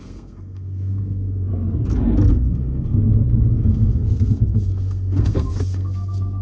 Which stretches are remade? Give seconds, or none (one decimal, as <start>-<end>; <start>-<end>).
0.0-1.5; 2.3-3.0; 3.5-6.4